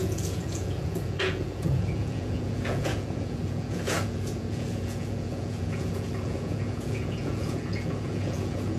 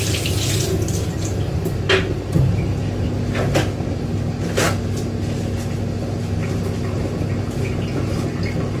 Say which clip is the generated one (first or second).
first